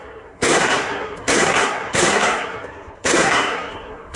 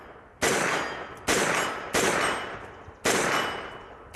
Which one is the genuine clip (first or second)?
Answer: second